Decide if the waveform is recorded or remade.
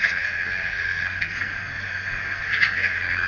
remade